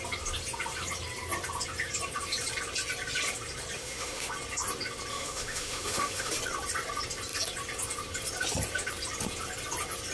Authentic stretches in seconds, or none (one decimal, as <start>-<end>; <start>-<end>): 0.0-3.8; 4.3-5.1; 6.3-10.1